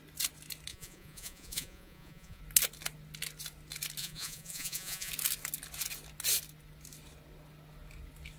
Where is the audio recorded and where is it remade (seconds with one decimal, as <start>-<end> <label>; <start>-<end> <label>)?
0.0-0.7 recorded; 0.7-2.4 remade; 2.4-4.0 recorded; 4.0-5.1 remade; 5.1-8.4 recorded